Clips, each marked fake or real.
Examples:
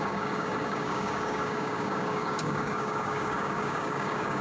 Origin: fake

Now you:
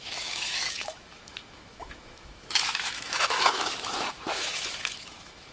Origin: fake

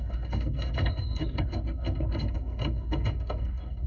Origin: fake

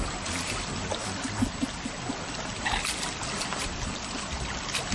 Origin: real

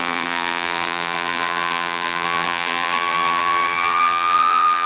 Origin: fake